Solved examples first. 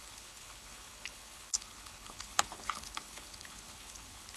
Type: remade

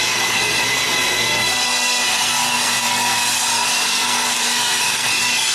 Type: remade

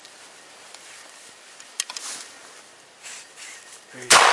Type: recorded